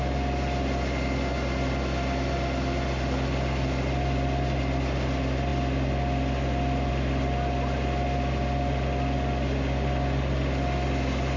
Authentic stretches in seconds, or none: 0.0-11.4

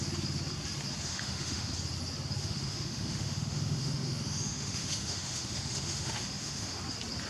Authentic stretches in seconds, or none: 0.0-1.1; 1.7-2.4; 6.8-7.3

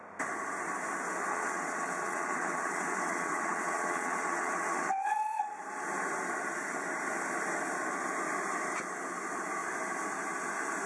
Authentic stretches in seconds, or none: 0.0-1.3; 5.6-10.9

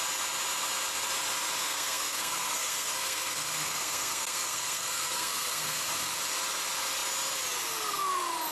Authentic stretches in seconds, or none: 0.0-1.6; 5.9-8.5